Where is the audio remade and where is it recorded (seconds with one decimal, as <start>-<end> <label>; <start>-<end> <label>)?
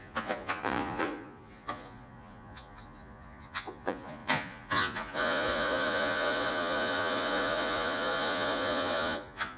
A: 0.0-9.6 remade